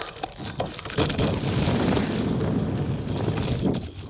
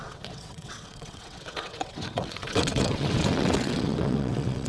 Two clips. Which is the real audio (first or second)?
first